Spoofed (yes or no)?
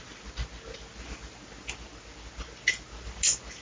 no